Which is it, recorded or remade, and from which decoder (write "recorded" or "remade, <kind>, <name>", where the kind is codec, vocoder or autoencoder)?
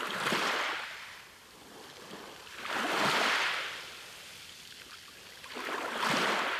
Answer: recorded